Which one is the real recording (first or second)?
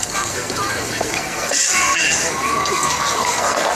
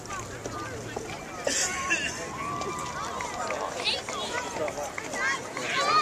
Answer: second